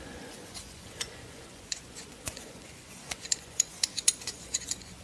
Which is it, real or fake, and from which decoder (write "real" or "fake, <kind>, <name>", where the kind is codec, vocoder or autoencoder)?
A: fake, vocoder, Vocos